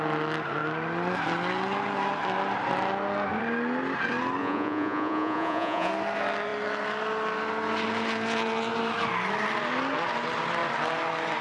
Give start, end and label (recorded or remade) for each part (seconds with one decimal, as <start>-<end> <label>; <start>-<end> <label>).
0.0-4.4 recorded; 4.4-5.9 remade; 5.9-11.4 recorded